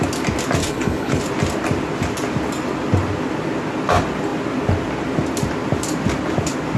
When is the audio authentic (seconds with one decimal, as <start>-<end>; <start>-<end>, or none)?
0.0-0.6; 1.2-6.8